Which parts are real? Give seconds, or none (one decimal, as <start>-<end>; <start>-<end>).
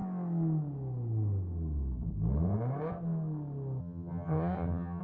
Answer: 0.0-3.8